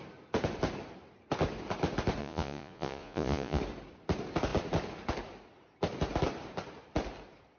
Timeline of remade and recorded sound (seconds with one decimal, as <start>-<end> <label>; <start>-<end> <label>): 0.0-2.2 recorded; 2.2-3.6 remade; 3.6-7.6 recorded